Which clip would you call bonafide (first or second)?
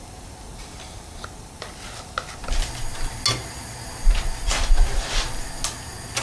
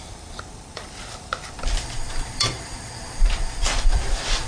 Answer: first